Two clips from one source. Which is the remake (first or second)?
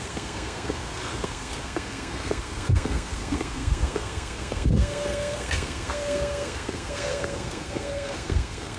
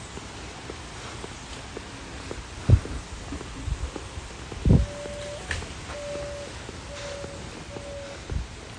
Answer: first